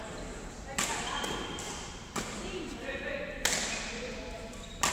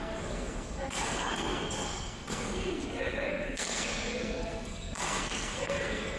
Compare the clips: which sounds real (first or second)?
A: first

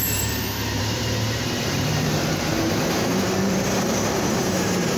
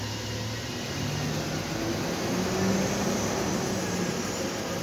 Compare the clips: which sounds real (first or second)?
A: second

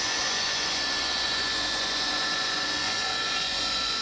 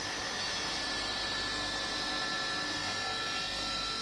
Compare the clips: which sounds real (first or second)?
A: second